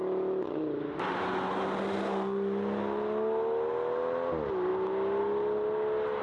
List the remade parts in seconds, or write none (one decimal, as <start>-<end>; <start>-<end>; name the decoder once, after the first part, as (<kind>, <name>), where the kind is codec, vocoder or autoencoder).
none